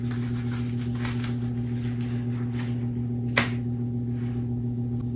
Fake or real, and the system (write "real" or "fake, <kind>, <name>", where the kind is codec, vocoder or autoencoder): real